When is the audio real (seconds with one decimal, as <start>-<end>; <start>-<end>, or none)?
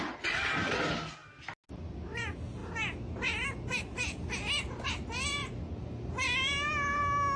0.0-7.4